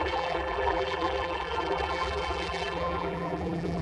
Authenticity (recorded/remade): remade